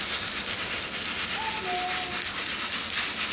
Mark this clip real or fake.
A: real